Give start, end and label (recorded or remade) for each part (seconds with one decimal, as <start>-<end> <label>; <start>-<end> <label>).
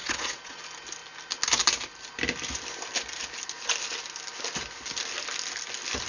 0.0-0.6 remade; 0.6-6.1 recorded